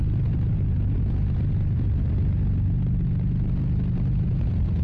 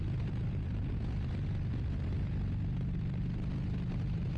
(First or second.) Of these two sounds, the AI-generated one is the second